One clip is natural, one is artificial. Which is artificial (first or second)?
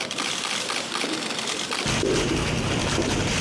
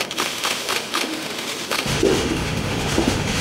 second